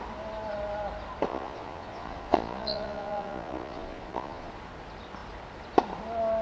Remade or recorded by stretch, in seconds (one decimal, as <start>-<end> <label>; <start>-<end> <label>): 0.0-1.3 recorded; 1.3-4.5 remade; 4.5-6.4 recorded